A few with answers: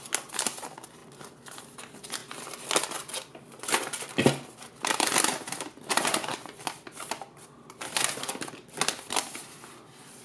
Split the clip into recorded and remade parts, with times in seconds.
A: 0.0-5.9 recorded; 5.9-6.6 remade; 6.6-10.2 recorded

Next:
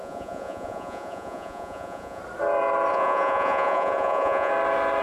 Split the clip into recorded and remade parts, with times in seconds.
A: 0.0-2.2 remade; 2.2-2.9 recorded; 2.9-4.5 remade; 4.5-5.0 recorded